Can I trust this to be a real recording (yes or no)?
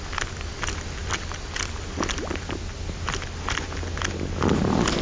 yes